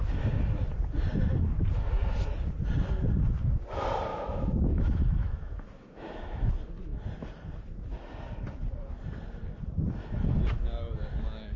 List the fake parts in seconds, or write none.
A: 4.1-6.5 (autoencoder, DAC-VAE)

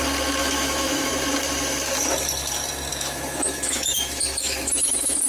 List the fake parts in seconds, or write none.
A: 0.4-1.1 (autoencoder, DAC-VAE); 2.9-5.3

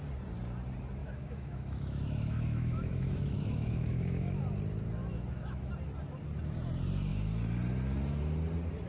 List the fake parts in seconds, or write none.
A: 1.0-4.4 (autoencoder, DAC-VAE); 5.0-5.7

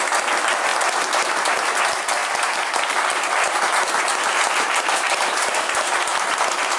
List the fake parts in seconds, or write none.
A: none

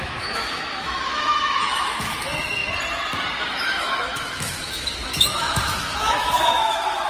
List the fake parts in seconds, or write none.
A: 0.0-2.6 (autoencoder, DAC-VAE); 3.3-7.1

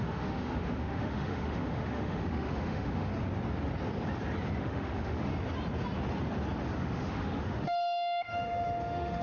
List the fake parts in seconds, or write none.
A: 0.0-3.1 (autoencoder, DAC-VAE); 4.6-5.3; 6.8-9.2